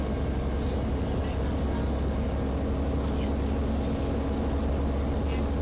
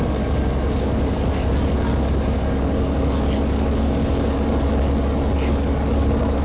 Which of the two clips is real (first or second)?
first